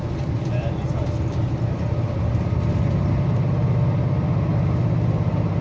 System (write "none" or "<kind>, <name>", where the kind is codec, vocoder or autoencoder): none